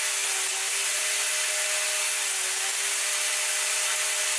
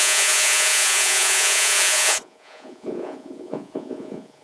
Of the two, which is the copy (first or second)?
second